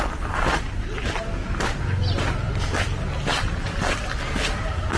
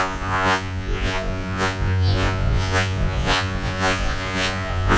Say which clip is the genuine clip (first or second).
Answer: first